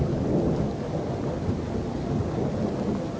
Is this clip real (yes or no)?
yes